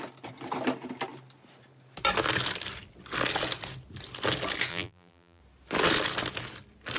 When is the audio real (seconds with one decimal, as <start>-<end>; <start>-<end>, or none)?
0.0-4.7; 5.4-7.0